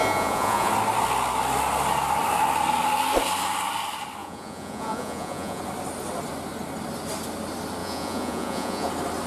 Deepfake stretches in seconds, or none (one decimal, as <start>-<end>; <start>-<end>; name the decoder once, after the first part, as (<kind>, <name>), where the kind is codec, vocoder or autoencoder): 0.0-0.7 (vocoder, Vocos); 4.2-5.6; 7.8-8.9